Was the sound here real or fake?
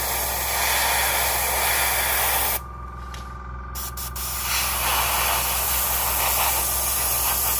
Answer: real